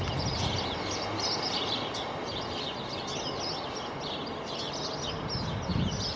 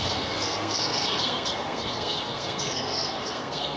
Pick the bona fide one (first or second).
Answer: first